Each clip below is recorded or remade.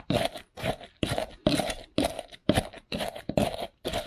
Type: recorded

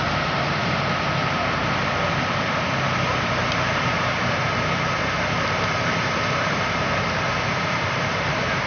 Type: remade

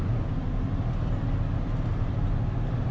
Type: recorded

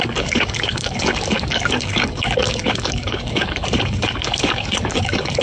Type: remade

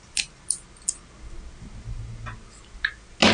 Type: recorded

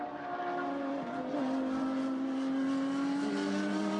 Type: recorded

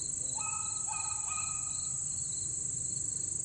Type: recorded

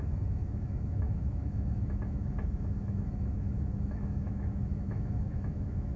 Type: remade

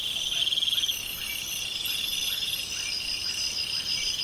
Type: recorded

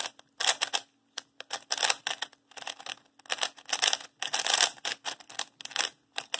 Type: recorded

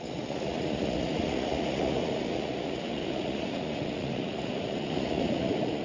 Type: remade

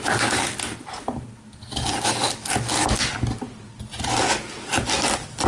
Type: recorded